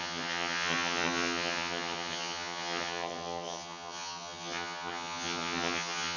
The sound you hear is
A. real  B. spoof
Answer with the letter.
B